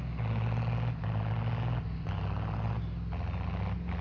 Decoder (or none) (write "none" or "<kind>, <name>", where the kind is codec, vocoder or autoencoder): none